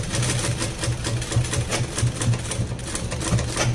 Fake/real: real